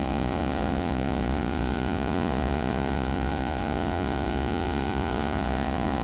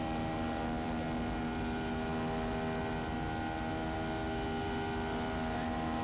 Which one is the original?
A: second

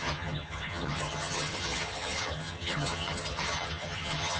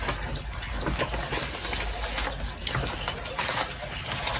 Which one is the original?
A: second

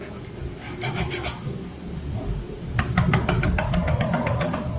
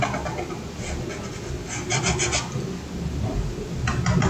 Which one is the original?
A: second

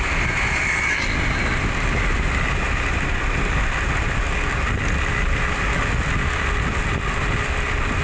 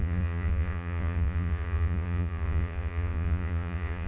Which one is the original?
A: first